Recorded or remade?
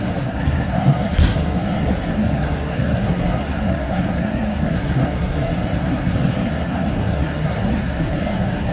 remade